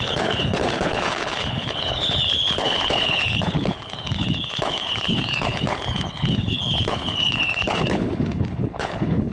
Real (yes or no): no